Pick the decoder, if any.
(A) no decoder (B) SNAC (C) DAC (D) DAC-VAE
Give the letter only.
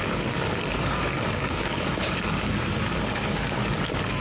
C